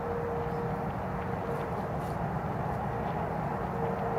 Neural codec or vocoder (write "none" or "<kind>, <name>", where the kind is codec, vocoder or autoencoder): none